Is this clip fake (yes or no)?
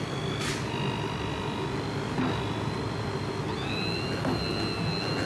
no